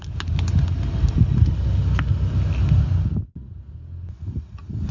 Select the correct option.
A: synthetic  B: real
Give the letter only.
B